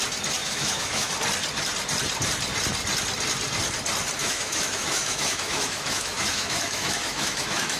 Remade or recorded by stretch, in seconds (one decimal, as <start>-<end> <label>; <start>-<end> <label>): 0.0-0.4 recorded; 0.4-1.1 remade; 1.1-4.2 recorded; 4.2-7.8 remade

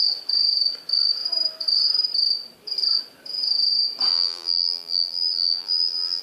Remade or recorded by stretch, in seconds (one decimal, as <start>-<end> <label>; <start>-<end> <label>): 0.0-4.1 recorded; 4.1-6.2 remade

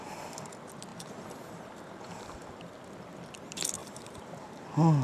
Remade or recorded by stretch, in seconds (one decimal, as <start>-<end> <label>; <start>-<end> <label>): 0.0-3.8 recorded; 3.8-4.6 remade; 4.6-5.0 recorded

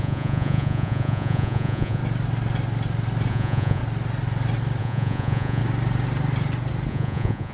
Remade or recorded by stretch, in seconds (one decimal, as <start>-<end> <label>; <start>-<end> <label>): 0.0-2.0 remade; 2.0-3.3 recorded; 3.3-3.8 remade; 3.8-4.8 recorded; 4.8-5.6 remade; 5.6-6.9 recorded; 6.9-7.5 remade